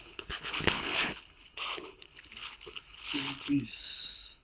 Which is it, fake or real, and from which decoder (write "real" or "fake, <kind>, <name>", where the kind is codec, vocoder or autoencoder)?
fake, codec, HILCodec